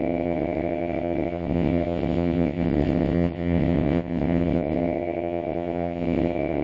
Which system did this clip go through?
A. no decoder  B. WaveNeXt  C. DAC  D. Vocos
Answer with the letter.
B